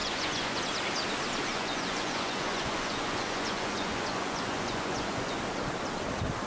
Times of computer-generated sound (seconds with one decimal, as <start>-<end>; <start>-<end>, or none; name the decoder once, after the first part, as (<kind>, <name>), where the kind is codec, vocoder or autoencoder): 0.0-0.6 (vocoder, Vocos); 1.5-5.4